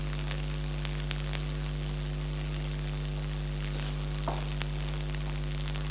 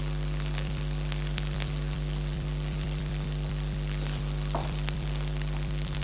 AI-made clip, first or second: second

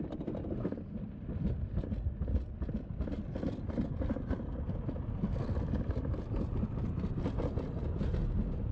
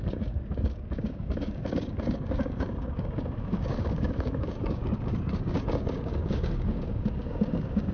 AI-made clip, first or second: second